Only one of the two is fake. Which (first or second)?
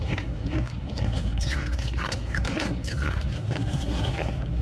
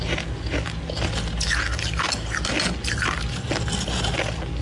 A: first